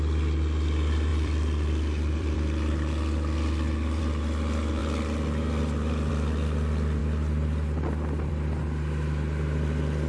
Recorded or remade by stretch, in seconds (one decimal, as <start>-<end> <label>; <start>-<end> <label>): 0.0-1.1 recorded; 1.1-4.0 remade; 4.0-10.1 recorded